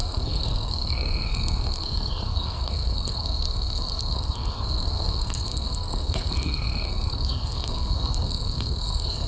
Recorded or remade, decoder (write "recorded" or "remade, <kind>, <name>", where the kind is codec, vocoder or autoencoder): remade, codec, SNAC